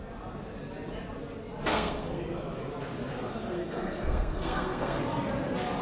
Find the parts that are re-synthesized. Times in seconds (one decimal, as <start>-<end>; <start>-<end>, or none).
1.7-2.2; 3.4-5.0

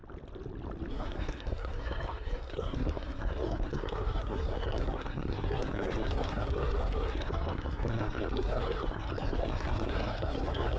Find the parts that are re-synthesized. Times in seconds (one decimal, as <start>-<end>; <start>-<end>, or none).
0.9-10.8

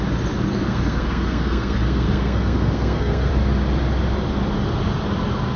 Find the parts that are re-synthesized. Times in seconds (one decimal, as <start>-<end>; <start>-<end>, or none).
0.5-3.3

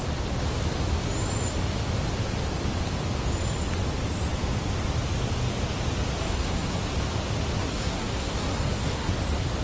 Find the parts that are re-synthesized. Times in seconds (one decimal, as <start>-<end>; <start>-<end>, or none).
6.2-6.8; 7.6-9.1